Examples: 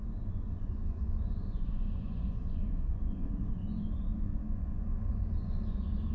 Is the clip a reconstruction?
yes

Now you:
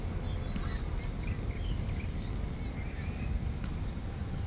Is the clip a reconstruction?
no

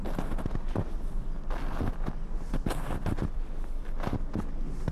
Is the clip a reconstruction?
no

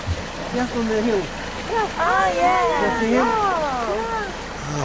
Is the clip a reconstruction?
no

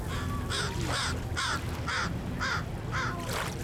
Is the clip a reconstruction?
no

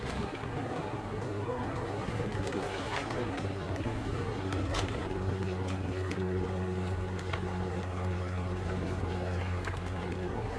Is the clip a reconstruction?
yes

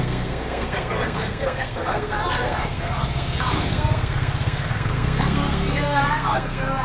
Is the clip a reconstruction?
yes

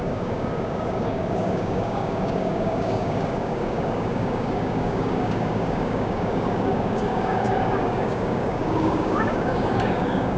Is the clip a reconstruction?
yes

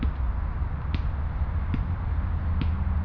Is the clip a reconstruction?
no